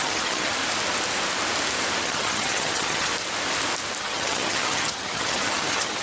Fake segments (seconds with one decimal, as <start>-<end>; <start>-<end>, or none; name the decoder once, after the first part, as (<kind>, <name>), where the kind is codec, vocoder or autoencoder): 0.0-0.6 (vocoder, HiFi-GAN); 2.0-3.1; 4.0-6.0